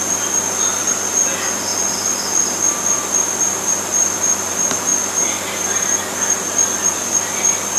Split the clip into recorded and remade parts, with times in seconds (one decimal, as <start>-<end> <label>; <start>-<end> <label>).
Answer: 0.0-7.8 recorded

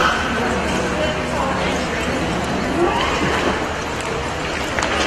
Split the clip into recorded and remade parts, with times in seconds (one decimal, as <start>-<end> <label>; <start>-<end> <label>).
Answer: 0.0-5.1 recorded

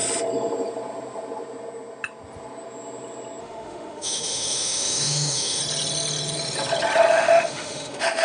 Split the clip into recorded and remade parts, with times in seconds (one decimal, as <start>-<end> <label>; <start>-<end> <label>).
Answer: 0.0-3.4 recorded; 3.4-5.6 remade; 5.6-7.1 recorded; 7.1-8.2 remade

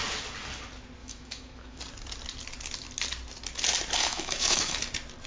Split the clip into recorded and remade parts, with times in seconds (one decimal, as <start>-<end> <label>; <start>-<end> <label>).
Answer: 0.0-1.0 recorded; 1.0-1.8 remade; 1.8-4.0 recorded; 4.0-4.8 remade; 4.8-5.3 recorded

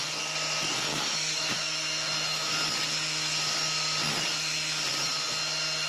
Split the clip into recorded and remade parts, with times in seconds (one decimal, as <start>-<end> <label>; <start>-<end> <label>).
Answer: 0.0-0.9 recorded; 0.9-2.5 remade; 2.5-5.9 recorded